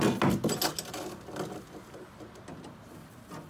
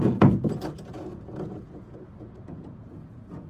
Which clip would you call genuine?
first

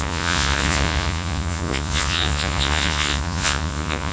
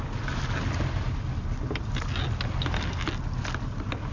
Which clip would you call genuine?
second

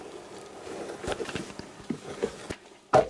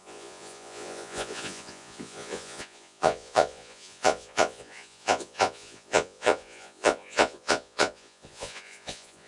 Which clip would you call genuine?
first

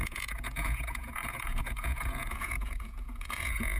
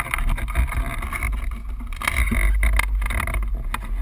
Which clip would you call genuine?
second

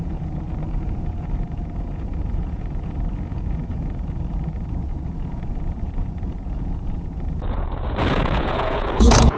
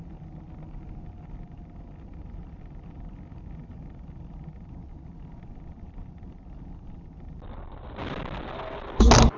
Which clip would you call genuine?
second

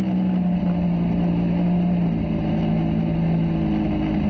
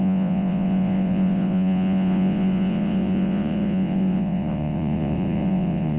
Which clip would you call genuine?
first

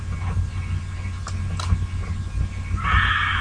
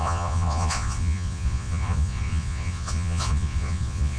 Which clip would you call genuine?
first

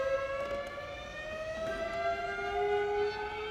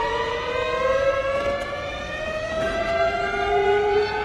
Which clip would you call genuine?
first